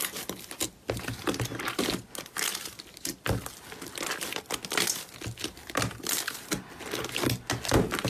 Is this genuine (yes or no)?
yes